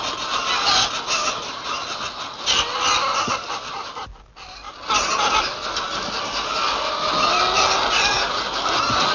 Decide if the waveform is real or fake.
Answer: real